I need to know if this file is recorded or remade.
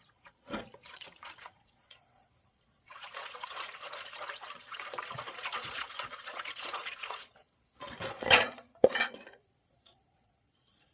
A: remade